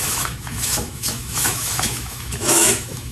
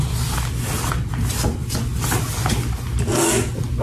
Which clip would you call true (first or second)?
second